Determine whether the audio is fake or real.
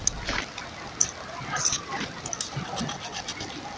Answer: real